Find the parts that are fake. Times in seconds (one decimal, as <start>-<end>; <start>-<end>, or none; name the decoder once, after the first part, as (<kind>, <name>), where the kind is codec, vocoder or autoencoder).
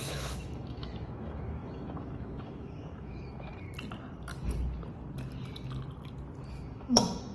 0.0-3.5 (autoencoder, DAC-VAE); 6.5-7.3